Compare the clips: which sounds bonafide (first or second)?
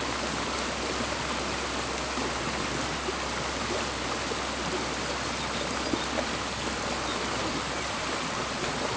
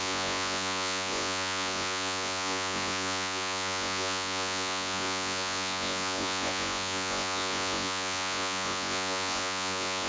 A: first